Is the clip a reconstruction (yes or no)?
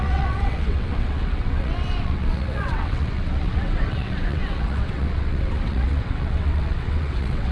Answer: yes